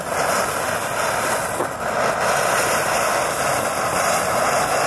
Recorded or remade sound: recorded